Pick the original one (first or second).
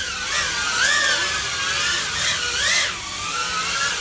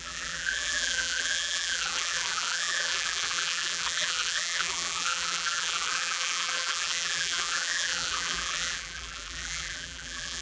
first